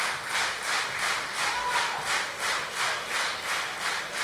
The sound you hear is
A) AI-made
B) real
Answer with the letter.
B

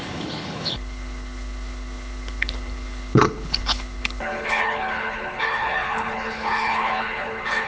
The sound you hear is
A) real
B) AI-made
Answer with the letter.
B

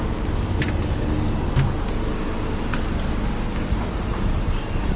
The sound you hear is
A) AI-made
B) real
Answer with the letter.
B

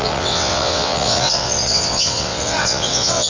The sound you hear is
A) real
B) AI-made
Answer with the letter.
B